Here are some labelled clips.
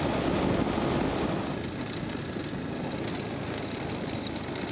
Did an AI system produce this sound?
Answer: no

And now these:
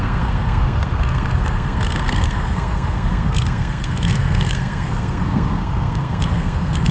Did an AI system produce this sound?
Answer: yes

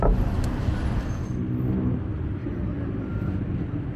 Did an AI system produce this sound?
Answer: no